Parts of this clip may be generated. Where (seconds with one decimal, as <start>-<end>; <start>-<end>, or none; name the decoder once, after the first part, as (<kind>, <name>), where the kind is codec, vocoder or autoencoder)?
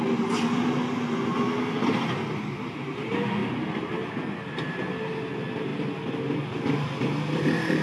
none